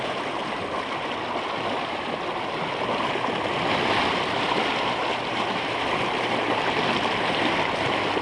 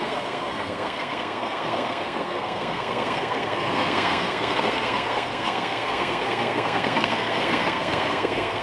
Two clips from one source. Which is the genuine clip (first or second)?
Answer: first